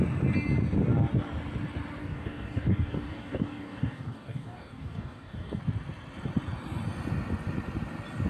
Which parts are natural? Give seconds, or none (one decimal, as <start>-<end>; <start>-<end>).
0.0-2.0; 5.6-8.3